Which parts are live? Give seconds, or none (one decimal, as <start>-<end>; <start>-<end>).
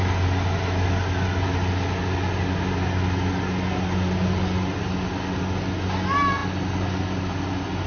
0.0-7.9